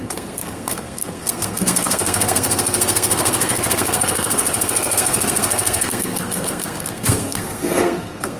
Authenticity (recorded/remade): remade